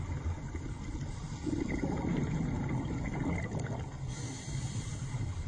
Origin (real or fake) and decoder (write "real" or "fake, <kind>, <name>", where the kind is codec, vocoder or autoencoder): real